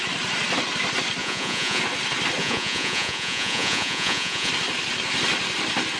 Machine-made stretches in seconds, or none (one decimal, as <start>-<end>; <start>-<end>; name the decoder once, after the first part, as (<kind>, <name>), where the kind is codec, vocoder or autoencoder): 1.2-1.8 (vocoder, Vocos); 2.4-4.5